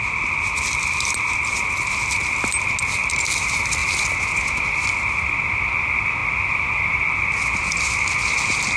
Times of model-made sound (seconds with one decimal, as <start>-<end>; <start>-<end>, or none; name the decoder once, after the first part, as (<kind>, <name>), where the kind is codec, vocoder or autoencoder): none